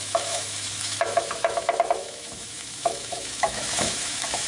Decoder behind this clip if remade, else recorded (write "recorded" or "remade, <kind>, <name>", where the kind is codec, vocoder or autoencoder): remade, autoencoder, DAC-VAE